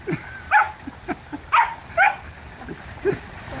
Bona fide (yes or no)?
yes